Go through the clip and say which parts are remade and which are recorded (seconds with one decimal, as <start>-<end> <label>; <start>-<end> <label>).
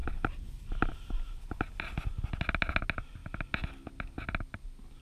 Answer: 0.0-5.0 recorded